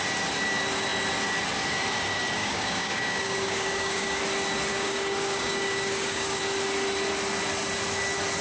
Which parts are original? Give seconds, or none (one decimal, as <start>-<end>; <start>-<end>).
0.0-2.4; 4.2-4.7; 6.4-8.4